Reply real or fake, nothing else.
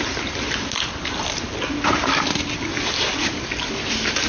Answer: real